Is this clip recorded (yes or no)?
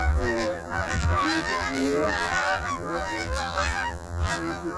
no